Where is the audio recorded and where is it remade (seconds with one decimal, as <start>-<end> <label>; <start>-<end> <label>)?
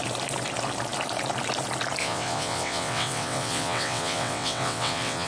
0.0-2.0 recorded; 2.0-5.3 remade